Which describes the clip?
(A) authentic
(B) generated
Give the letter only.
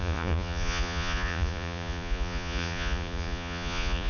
B